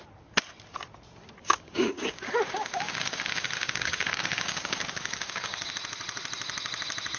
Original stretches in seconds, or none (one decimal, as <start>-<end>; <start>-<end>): 0.0-1.4; 5.7-7.2